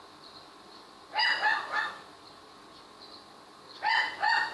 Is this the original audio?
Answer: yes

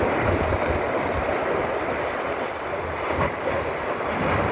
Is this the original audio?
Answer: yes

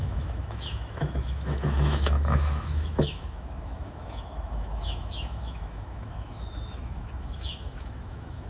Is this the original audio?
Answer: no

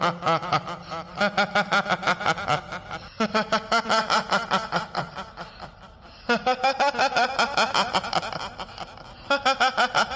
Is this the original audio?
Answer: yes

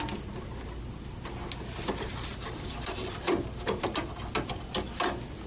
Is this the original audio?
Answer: yes